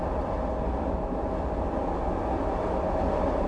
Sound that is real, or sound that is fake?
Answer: real